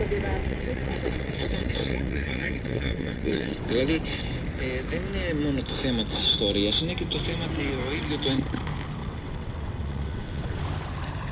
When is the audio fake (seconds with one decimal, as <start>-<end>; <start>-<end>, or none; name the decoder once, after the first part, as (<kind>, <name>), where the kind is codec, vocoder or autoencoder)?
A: 0.4-3.6 (vocoder, WaveNeXt); 9.0-10.6